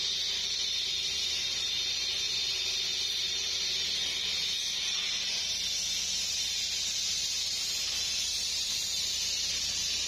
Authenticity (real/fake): real